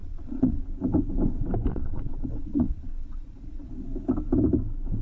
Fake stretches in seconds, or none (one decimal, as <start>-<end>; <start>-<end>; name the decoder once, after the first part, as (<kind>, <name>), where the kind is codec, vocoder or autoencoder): 0.0-0.6 (vocoder, Vocos); 1.7-3.7